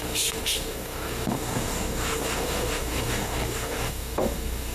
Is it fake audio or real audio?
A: fake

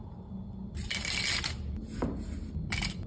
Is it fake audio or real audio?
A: real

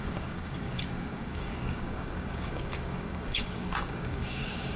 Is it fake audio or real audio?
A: fake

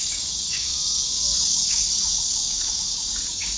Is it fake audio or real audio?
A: fake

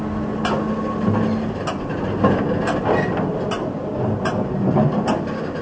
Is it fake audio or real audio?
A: real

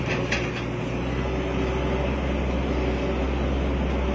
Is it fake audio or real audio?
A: real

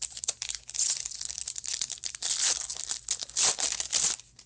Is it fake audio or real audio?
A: real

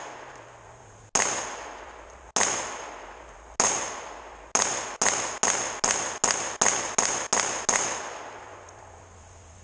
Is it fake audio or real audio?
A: real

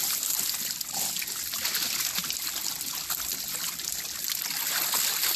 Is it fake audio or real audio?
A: real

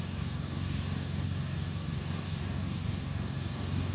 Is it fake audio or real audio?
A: fake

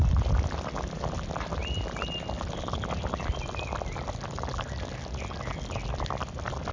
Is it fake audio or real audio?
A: real